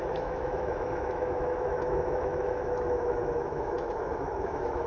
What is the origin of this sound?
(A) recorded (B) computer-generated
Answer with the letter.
B